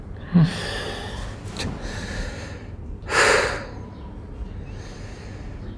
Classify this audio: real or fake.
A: real